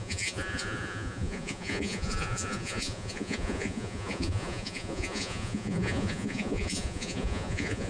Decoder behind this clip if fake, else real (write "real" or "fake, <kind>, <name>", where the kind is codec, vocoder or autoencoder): fake, vocoder, Vocos